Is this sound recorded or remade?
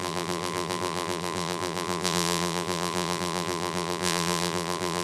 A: remade